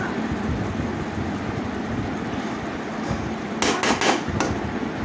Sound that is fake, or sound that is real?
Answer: real